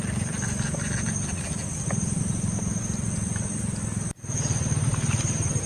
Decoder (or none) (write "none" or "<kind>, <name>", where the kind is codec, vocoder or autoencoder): none